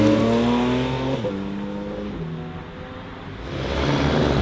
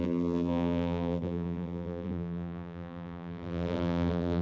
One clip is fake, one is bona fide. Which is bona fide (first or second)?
first